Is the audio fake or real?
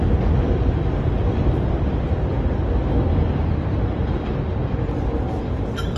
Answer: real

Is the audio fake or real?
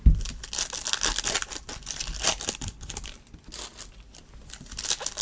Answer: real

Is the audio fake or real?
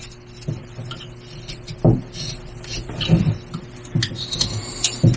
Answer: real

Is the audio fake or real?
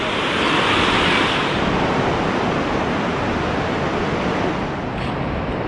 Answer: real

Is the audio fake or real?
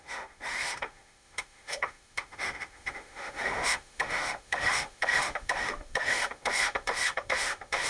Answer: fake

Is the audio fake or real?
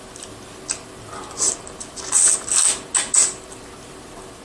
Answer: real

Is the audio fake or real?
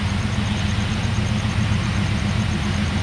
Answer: fake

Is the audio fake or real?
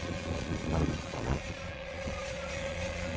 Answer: fake